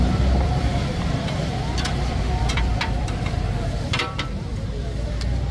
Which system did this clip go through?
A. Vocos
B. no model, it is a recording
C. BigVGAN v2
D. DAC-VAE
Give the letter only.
C